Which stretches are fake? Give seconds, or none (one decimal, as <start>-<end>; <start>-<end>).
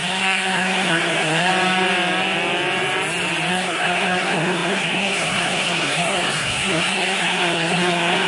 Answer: 0.0-1.5; 3.5-8.3